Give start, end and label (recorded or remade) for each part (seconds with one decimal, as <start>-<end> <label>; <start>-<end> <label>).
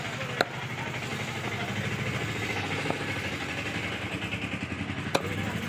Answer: 0.0-5.7 recorded